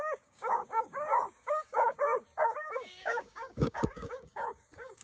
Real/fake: fake